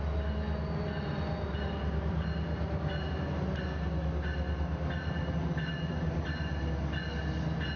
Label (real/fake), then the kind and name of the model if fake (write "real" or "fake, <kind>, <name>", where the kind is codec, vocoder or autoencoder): real